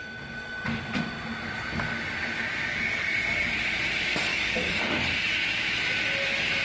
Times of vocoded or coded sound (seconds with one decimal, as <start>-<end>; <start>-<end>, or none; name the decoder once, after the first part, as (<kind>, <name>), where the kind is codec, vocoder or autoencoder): 2.7-3.5 (codec, DAC); 4.3-5.1